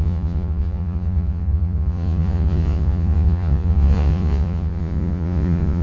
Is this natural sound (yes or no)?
no